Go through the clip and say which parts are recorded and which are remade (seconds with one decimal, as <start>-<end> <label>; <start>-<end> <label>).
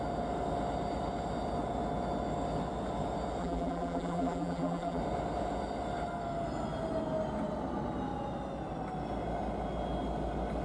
0.0-3.4 recorded; 3.4-5.0 remade; 5.0-10.6 recorded